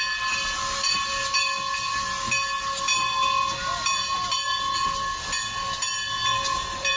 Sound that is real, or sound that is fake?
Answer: real